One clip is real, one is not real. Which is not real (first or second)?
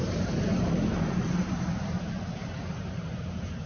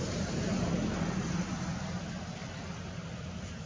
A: first